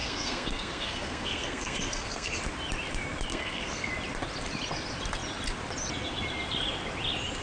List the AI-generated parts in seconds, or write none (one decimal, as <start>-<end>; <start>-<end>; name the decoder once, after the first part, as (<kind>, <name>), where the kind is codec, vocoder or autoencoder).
0.0-2.4 (codec, SNAC); 3.3-3.9